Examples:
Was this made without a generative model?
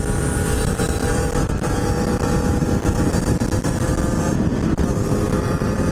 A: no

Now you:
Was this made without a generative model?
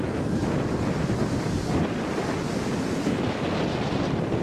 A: yes